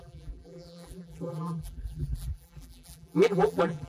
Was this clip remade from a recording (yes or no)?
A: yes